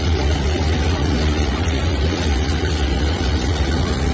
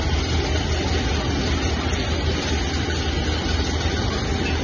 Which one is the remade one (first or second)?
first